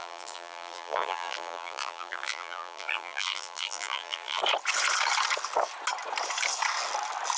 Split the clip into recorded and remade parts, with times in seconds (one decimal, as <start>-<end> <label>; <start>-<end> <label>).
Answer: 0.0-4.4 remade; 4.4-7.4 recorded